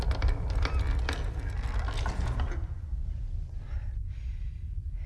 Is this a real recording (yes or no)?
yes